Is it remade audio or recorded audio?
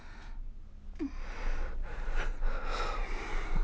recorded